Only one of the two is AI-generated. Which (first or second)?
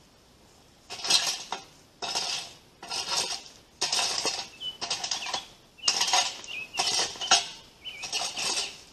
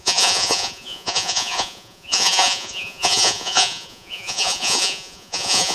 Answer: second